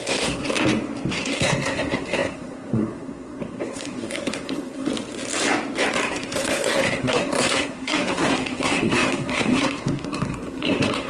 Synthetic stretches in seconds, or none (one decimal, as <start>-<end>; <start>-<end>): 0.0-0.4; 1.1-4.9; 6.1-11.1